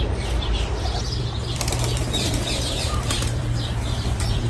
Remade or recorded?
remade